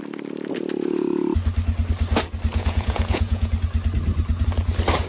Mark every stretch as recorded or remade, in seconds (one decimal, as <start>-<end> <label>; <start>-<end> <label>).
0.0-2.5 recorded; 2.5-3.5 remade; 3.5-5.1 recorded